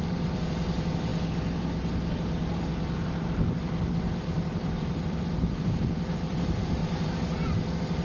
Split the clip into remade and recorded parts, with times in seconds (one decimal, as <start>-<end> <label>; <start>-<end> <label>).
0.0-1.1 remade; 1.1-4.2 recorded; 4.2-6.8 remade; 6.8-7.6 recorded; 7.6-8.0 remade